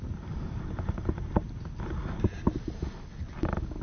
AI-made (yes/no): no